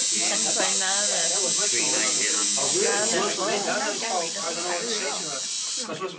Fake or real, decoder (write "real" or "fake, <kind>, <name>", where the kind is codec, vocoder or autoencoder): real